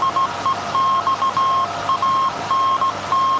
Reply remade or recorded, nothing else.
recorded